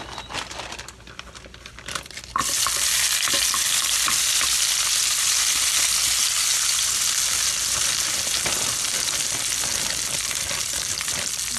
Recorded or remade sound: remade